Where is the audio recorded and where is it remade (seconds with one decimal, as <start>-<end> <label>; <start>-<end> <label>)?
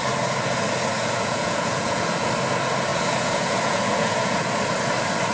0.0-0.9 recorded; 0.9-2.3 remade; 2.3-2.9 recorded; 2.9-4.5 remade; 4.5-5.3 recorded